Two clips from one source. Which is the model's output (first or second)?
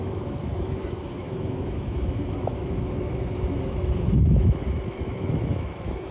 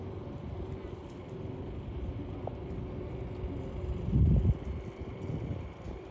first